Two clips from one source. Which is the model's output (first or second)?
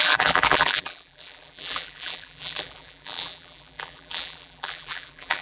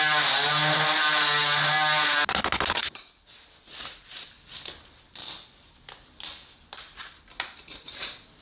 first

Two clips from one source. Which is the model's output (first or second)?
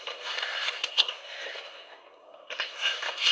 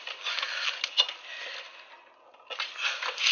first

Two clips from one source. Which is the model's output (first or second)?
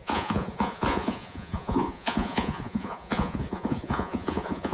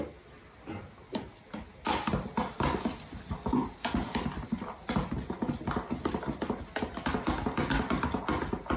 first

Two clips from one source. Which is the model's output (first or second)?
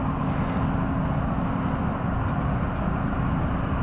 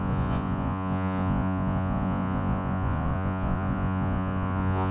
second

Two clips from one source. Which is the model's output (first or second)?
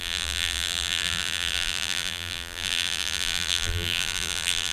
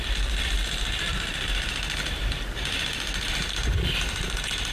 first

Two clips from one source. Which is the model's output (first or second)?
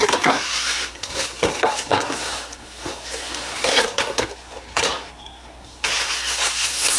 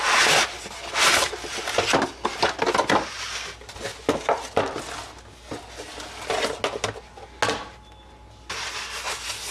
first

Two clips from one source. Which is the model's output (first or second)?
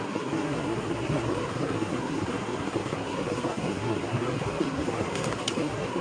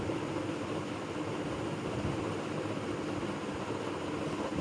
first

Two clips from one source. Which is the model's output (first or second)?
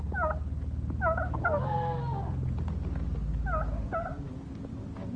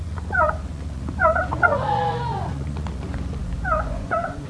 second